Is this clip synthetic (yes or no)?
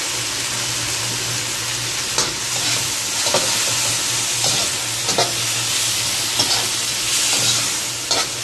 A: no